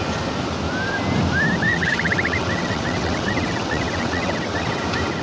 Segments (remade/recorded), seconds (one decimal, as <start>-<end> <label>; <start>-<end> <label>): 0.0-1.7 recorded; 1.7-4.8 remade; 4.8-5.2 recorded